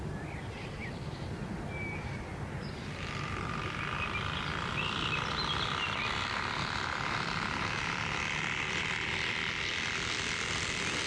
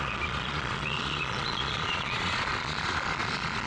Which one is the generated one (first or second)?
second